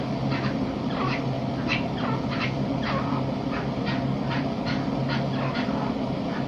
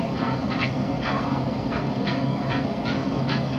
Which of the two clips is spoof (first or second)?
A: second